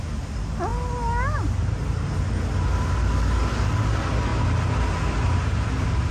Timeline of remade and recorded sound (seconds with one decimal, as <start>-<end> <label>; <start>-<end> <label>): 0.0-3.0 recorded; 3.0-3.9 remade; 3.9-6.1 recorded